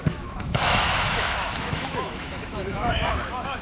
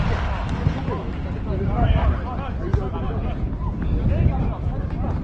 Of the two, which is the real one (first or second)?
second